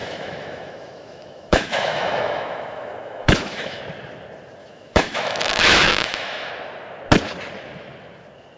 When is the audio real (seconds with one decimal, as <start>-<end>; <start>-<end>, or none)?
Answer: 3.8-4.6; 6.5-8.6